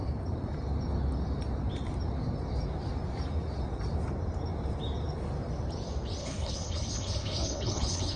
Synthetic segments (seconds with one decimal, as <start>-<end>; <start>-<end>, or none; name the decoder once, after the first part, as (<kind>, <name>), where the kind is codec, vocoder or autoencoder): 6.2-8.2 (codec, HILCodec)